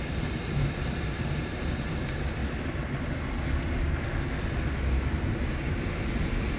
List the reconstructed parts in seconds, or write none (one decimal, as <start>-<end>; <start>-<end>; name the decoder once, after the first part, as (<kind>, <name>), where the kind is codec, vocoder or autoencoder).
0.0-2.4 (vocoder, BigVGAN v2); 5.3-6.6